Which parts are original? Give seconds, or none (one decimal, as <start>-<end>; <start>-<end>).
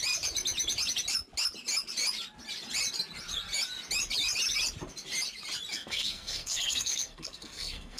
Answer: 0.0-5.7